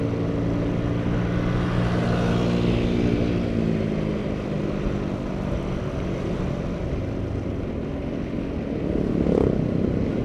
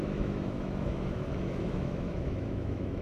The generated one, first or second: second